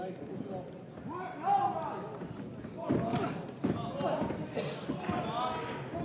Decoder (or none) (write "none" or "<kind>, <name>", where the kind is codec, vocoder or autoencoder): none